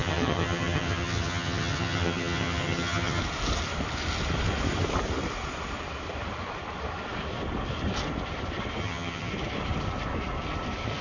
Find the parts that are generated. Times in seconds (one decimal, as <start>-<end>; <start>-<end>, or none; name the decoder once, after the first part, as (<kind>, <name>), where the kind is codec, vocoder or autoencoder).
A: 0.0-3.2 (vocoder, HiFi-GAN); 8.8-9.3